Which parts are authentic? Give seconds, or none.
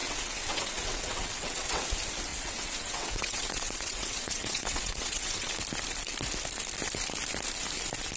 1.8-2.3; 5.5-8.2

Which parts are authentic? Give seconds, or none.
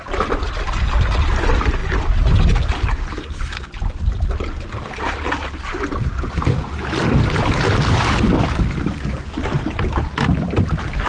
0.0-11.1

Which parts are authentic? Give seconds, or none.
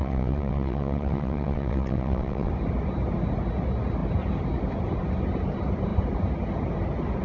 2.5-7.2